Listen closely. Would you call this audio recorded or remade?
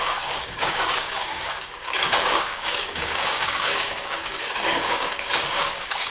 remade